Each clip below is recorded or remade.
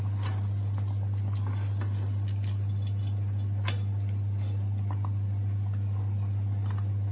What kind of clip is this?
recorded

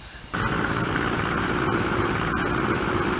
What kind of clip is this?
remade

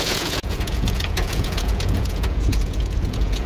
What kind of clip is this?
remade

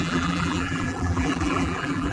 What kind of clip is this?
remade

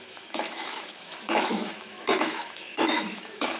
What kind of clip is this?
remade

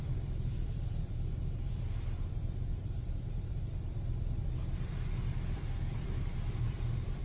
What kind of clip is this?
remade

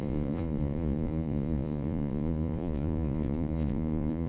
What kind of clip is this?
remade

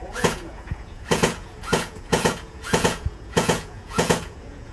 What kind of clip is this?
remade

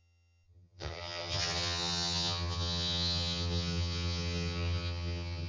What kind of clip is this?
remade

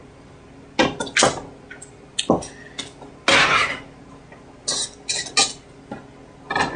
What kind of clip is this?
recorded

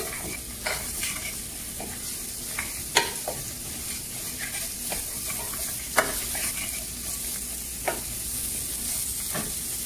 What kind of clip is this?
recorded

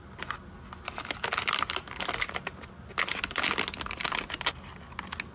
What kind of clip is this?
recorded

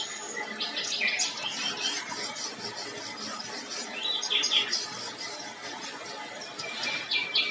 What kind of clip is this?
recorded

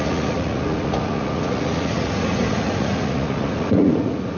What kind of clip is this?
remade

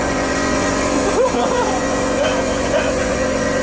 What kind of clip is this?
remade